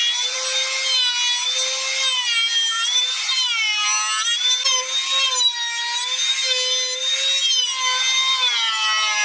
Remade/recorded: recorded